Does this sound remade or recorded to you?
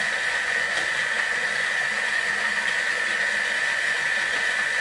remade